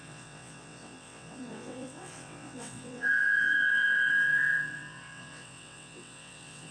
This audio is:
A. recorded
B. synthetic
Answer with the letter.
B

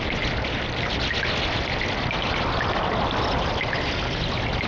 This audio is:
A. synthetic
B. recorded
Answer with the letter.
B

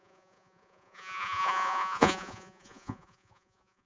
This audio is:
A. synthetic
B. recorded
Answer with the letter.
A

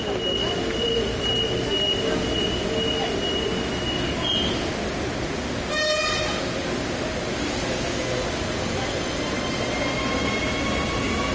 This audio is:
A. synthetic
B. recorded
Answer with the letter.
B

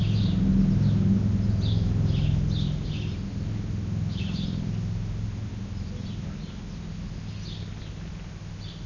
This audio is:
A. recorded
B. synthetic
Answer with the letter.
A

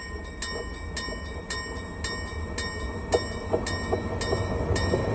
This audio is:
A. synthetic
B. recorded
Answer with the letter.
B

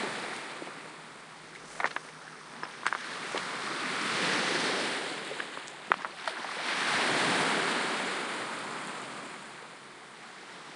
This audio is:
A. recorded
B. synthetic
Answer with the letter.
A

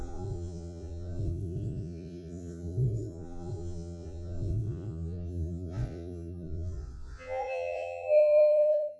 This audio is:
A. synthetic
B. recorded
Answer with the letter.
A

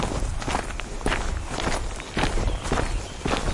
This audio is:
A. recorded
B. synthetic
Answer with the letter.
A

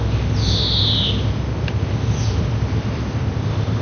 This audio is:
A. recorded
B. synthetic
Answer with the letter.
A